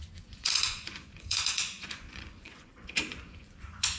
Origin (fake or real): fake